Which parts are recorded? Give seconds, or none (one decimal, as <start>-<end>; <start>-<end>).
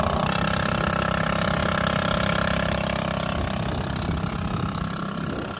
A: 0.0-5.6